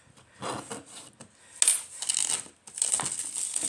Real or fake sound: real